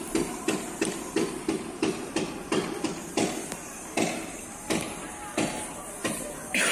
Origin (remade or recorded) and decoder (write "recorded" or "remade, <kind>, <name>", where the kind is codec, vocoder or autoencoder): remade, vocoder, BigVGAN v2